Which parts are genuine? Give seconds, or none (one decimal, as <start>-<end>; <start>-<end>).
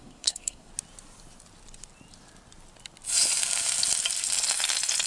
0.7-5.1